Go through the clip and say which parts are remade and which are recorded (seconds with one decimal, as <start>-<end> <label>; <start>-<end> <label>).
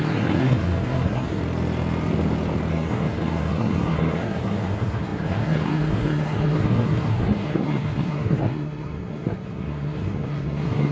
0.0-1.4 remade; 1.4-2.7 recorded; 2.7-10.9 remade